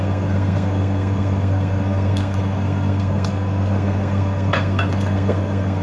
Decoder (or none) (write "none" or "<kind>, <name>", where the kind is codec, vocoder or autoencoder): codec, SNAC